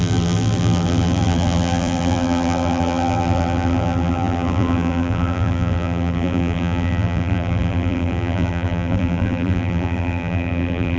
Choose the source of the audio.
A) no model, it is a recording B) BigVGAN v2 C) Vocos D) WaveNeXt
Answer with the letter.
B